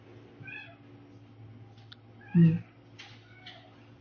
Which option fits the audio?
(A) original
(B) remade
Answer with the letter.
A